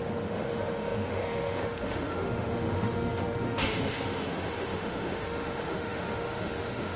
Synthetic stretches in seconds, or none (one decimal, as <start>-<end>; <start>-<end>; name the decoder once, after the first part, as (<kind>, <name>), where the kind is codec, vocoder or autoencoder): 0.0-7.0 (autoencoder, DAC-VAE)